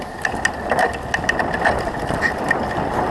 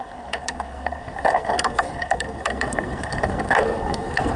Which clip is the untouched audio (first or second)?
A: first